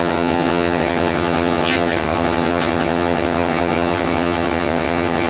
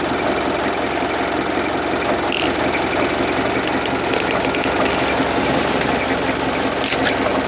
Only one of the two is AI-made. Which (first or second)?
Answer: first